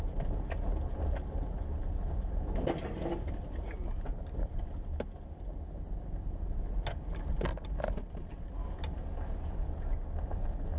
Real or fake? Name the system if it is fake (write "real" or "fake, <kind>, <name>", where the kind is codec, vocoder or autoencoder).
real